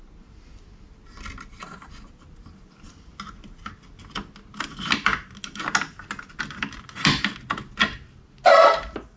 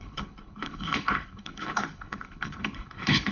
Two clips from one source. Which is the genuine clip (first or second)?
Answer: first